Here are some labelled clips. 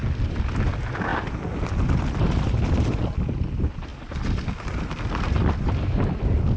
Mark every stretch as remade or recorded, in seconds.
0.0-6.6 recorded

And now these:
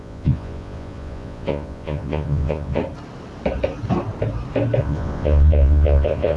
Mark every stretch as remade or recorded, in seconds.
0.0-2.8 remade; 2.8-4.8 recorded; 4.8-6.4 remade